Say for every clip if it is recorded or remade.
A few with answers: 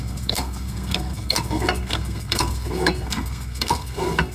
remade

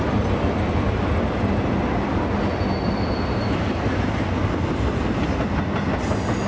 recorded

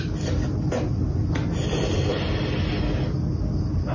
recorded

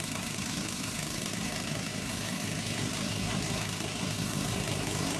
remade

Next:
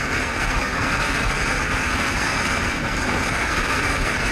remade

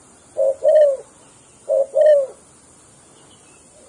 recorded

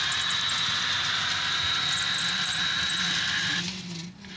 recorded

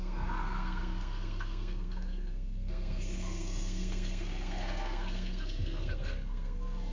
remade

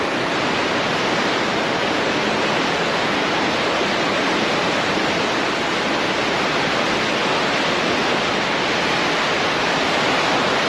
recorded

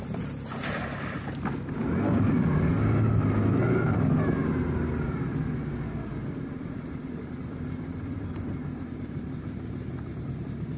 recorded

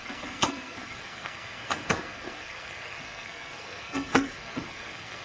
remade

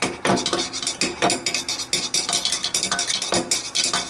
recorded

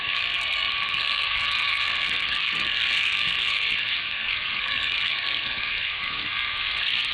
remade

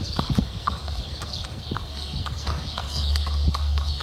remade